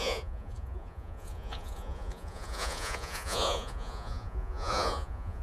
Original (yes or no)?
no